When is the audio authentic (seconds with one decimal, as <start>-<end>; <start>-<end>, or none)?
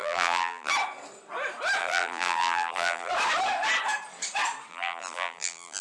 0.7-1.8; 3.1-4.7